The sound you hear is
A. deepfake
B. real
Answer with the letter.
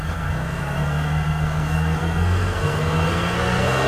A